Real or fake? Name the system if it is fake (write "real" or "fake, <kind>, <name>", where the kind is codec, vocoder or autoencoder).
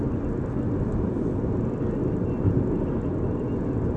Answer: real